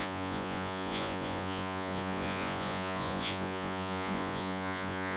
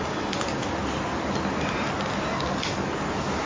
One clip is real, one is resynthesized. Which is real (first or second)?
second